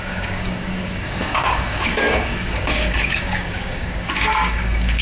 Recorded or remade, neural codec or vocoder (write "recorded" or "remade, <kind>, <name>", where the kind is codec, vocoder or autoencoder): remade, codec, DAC